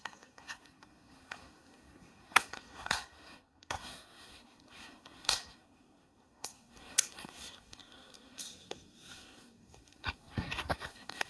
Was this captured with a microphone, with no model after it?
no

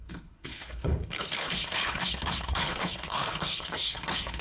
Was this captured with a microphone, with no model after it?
no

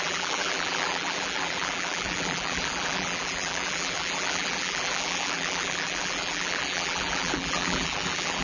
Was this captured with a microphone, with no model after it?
no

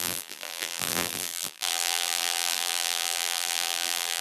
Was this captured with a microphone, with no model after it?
no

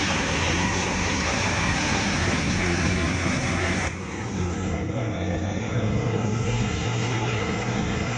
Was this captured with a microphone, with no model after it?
no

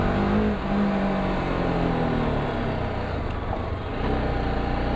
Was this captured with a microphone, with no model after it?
yes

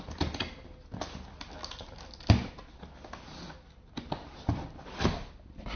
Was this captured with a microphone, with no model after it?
yes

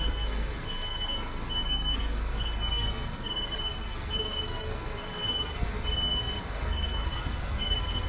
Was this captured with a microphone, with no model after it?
no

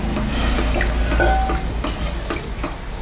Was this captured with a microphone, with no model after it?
yes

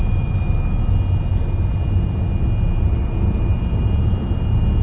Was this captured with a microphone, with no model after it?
yes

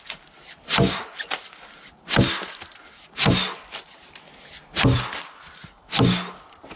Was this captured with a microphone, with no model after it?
yes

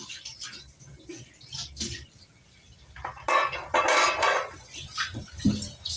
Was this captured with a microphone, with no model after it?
yes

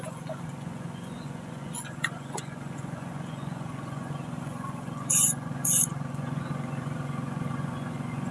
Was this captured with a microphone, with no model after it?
no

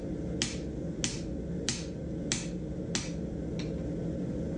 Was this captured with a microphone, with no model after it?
yes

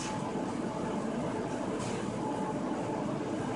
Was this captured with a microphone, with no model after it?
yes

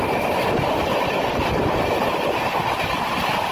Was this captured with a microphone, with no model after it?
yes